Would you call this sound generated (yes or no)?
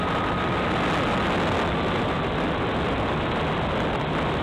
no